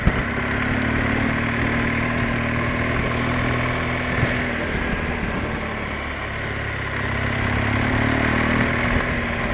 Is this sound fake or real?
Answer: real